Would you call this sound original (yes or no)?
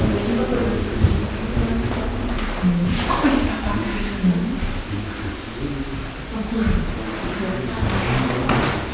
yes